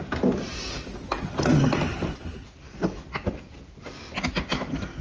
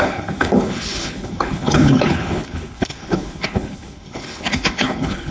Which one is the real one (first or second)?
first